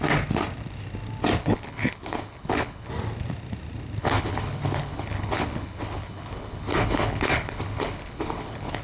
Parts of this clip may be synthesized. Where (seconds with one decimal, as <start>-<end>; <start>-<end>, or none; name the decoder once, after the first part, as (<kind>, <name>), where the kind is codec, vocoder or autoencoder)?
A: 1.4-2.9 (codec, HILCodec); 4.0-8.8